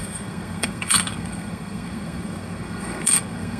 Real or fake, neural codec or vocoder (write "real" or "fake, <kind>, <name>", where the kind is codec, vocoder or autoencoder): fake, codec, SNAC